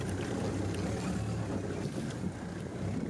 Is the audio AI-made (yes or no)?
no